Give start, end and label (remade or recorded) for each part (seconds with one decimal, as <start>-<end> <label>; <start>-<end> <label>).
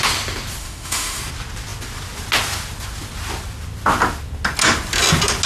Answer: 0.0-0.6 recorded; 0.6-1.2 remade; 1.2-5.5 recorded